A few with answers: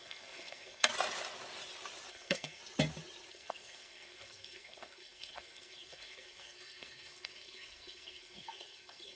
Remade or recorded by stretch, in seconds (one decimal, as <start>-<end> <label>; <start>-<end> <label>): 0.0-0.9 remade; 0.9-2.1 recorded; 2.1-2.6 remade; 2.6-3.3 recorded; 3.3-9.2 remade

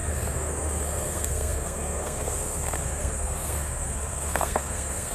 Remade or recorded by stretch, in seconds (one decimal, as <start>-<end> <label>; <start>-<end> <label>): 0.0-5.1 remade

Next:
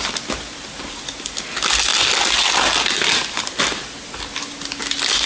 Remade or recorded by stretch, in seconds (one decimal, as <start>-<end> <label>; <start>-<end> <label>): 0.0-5.3 recorded

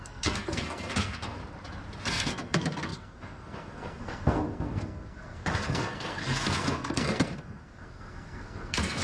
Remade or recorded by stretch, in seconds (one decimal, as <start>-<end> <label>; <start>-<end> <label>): 0.0-1.4 remade; 1.4-2.1 recorded; 2.1-9.0 remade

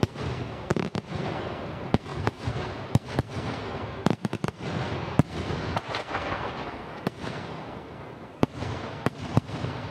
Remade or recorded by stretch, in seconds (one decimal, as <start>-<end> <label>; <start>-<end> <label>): 0.0-9.9 remade